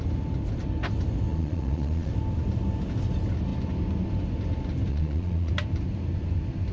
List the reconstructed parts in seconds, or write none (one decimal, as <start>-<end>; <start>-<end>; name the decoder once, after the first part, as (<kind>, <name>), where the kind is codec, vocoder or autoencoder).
1.3-2.1 (vocoder, Vocos); 4.9-5.5